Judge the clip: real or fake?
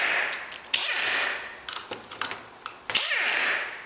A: real